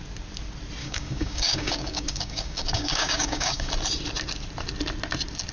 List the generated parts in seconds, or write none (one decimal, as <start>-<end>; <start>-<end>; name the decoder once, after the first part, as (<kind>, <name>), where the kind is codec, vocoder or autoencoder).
0.8-3.7 (codec, DAC)